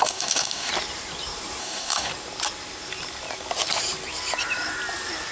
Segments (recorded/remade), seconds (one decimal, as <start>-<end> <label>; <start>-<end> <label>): 0.0-0.7 remade; 0.7-1.6 recorded; 1.6-2.1 remade; 2.1-5.3 recorded